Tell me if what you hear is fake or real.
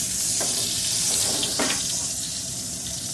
fake